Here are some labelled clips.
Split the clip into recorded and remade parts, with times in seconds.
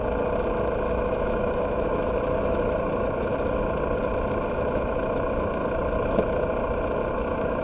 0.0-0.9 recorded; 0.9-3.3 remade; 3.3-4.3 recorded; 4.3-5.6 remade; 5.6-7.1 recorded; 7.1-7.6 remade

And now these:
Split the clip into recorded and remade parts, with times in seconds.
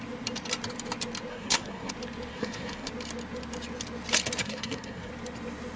0.0-1.3 recorded; 1.3-1.9 remade; 1.9-2.3 recorded; 2.3-2.9 remade; 2.9-4.4 recorded; 4.4-5.1 remade; 5.1-5.8 recorded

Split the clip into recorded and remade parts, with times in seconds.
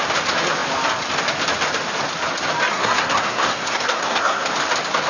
0.0-2.7 recorded; 2.7-4.5 remade; 4.5-5.1 recorded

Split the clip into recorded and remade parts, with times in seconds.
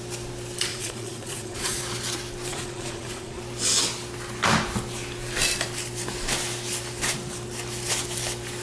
0.0-0.7 recorded; 0.7-1.8 remade; 1.8-2.5 recorded; 2.5-3.4 remade; 3.4-8.6 recorded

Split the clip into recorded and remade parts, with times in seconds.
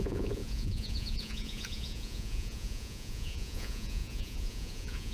0.0-5.1 remade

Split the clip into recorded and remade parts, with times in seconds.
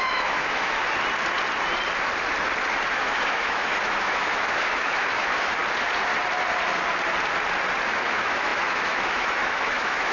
0.0-0.8 remade; 0.8-2.9 recorded; 2.9-5.6 remade; 5.6-7.9 recorded; 7.9-10.1 remade